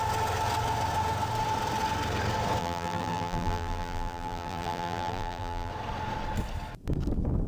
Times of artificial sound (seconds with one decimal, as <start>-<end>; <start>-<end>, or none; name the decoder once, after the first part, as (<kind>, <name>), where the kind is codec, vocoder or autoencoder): 2.6-5.7 (vocoder, BigVGAN v2)